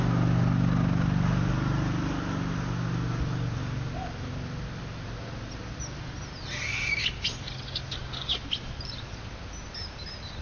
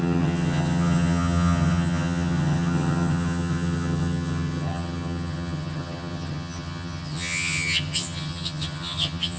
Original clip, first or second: first